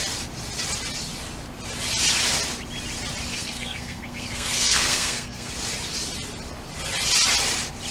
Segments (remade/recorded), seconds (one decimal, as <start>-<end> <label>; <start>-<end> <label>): 0.0-3.3 recorded; 3.3-5.5 remade; 5.5-7.9 recorded